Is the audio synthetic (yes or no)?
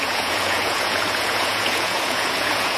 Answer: yes